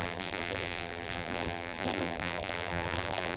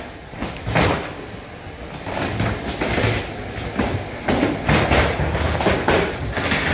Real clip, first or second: second